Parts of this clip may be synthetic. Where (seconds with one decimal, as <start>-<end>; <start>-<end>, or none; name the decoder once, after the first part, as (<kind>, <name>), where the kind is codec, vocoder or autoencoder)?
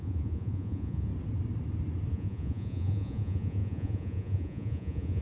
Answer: 0.0-1.1 (vocoder, Vocos); 2.1-5.2